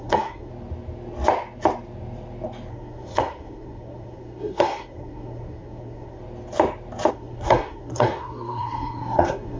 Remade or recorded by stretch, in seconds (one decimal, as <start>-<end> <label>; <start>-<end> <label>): 0.0-0.5 remade; 0.5-2.7 recorded; 2.7-6.2 remade; 6.2-7.1 recorded; 7.1-9.6 remade